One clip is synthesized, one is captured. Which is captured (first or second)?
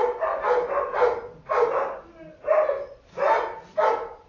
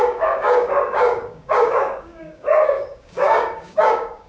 first